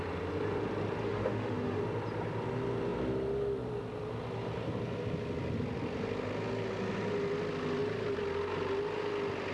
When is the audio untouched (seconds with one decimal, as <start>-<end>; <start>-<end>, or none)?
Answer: 0.0-1.0; 1.8-9.5